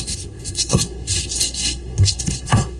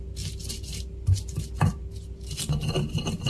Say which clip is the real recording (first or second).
second